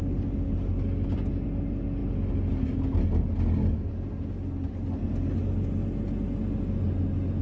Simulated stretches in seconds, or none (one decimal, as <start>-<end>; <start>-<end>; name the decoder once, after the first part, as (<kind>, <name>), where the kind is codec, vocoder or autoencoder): none